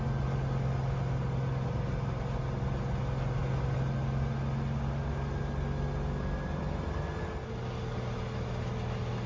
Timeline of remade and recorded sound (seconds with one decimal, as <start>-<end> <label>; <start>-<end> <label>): 0.0-9.3 recorded